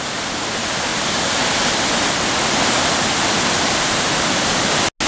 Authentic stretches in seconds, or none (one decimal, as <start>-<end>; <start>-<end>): 0.0-5.1